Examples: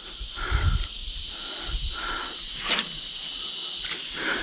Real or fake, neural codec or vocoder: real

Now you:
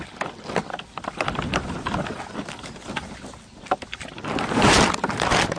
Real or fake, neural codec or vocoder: real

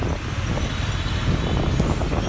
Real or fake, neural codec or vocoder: real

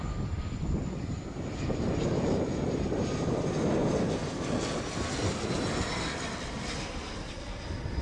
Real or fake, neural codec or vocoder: real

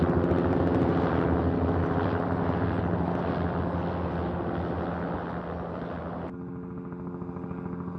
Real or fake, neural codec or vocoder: real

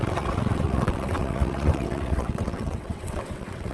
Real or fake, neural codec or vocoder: fake, vocoder, WaveNeXt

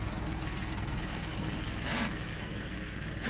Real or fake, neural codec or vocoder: fake, codec, SNAC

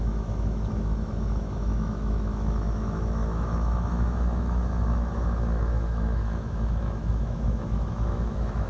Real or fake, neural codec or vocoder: fake, autoencoder, DAC-VAE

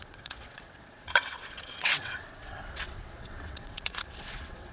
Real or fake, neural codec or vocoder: fake, vocoder, WaveNeXt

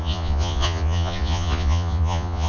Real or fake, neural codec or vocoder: fake, vocoder, Vocos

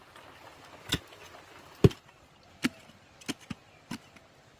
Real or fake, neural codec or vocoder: real